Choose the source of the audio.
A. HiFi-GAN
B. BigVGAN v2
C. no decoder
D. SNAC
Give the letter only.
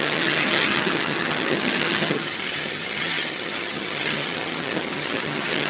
A